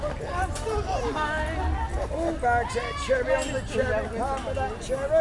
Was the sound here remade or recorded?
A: recorded